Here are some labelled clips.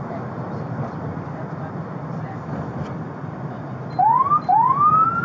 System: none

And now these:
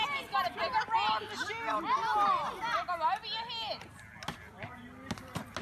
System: none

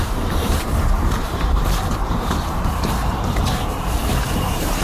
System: vocoder, BigVGAN v2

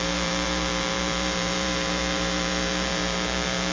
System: vocoder, BigVGAN v2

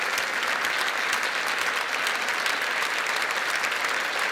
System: none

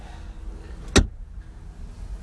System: none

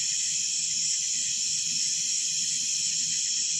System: none